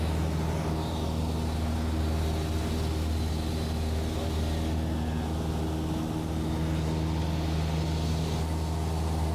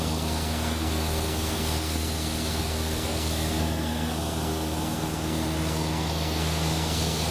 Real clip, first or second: first